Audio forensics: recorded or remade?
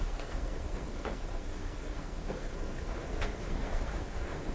remade